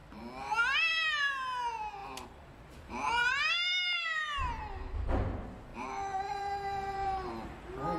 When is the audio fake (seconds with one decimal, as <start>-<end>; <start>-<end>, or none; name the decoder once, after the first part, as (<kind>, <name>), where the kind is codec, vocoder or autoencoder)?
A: 2.0-3.4 (vocoder, BigVGAN v2); 5.7-7.3